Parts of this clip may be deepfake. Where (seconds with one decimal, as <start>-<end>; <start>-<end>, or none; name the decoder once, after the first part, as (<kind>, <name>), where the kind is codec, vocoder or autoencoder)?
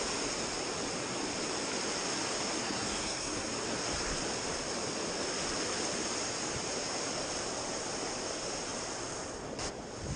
2.6-3.5 (codec, SNAC)